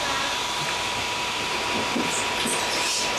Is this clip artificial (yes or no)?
no